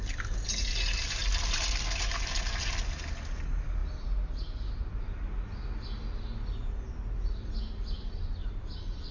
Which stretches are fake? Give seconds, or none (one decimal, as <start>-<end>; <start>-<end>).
none